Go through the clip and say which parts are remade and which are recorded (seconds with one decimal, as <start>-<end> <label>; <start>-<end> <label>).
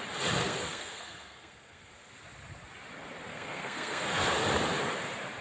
0.0-0.4 recorded; 0.4-1.9 remade; 1.9-3.3 recorded; 3.3-4.2 remade; 4.2-5.4 recorded